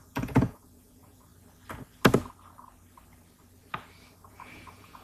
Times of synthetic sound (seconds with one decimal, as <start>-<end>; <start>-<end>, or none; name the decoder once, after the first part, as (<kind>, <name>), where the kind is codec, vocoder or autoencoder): 0.0-1.3 (vocoder, Vocos); 4.3-5.0